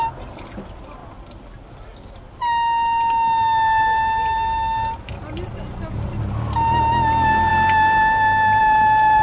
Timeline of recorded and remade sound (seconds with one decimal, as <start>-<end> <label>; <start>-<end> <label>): 0.0-9.2 recorded